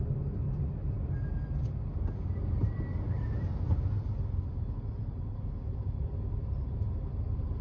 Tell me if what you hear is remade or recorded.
recorded